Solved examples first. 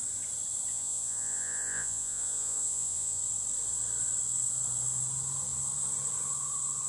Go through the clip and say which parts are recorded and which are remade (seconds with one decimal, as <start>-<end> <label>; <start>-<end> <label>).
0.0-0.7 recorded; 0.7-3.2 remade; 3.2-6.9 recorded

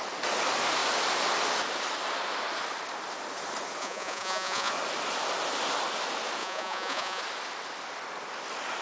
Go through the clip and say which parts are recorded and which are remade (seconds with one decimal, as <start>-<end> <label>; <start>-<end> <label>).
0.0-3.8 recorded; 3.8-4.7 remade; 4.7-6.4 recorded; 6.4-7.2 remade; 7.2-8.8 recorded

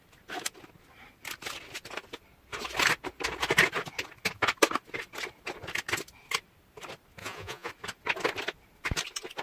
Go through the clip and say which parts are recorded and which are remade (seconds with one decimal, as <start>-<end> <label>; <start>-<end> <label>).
0.0-7.2 recorded; 7.2-7.7 remade; 7.7-9.4 recorded

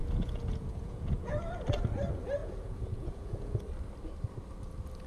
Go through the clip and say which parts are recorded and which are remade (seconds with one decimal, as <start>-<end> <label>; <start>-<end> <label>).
0.0-1.3 remade; 1.3-2.4 recorded; 2.4-3.6 remade; 3.6-5.1 recorded

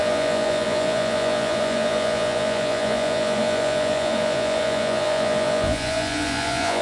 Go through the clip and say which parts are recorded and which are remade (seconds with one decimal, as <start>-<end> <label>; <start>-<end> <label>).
0.0-6.8 remade

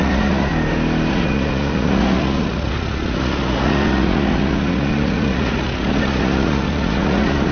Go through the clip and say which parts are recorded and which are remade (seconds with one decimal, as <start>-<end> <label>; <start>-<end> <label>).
0.0-0.5 remade; 0.5-1.1 recorded; 1.1-7.5 remade

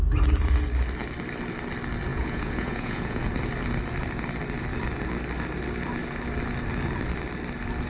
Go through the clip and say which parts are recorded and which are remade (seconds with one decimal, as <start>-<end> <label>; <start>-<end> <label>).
0.0-2.1 recorded; 2.1-3.2 remade; 3.2-7.9 recorded

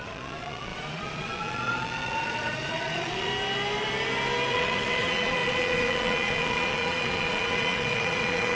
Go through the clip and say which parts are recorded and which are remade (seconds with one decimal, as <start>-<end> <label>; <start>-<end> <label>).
0.0-3.3 remade; 3.3-4.5 recorded; 4.5-8.5 remade